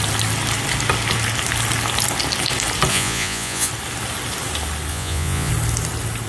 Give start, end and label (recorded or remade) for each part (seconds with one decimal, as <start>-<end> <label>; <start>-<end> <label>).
0.0-2.9 recorded; 2.9-3.7 remade; 3.7-4.9 recorded; 4.9-5.5 remade; 5.5-6.3 recorded